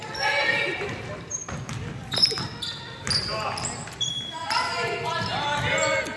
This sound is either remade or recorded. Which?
recorded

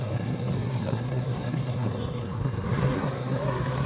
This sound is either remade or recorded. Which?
remade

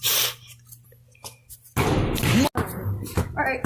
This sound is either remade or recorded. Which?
recorded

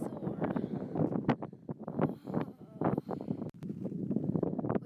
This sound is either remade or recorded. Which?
recorded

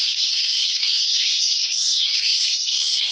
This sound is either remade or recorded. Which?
remade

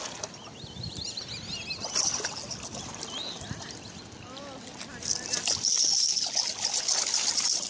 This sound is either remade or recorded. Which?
recorded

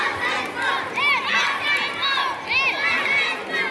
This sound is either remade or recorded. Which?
recorded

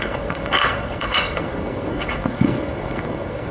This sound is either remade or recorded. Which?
remade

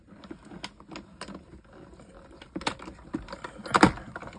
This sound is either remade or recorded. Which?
recorded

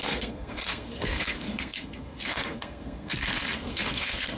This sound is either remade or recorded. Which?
remade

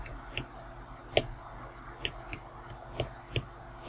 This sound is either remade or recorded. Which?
recorded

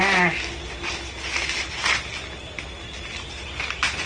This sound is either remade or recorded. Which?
recorded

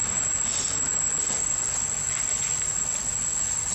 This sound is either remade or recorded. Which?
recorded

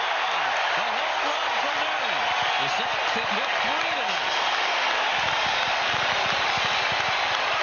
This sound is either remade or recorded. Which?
recorded